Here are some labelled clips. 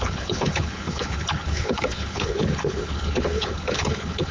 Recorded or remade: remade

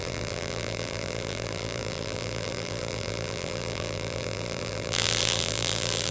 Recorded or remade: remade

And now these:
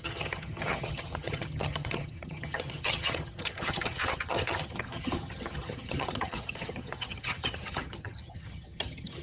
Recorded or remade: remade